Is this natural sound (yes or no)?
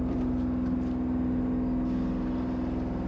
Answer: yes